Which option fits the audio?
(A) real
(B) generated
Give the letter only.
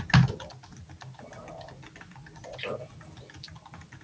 A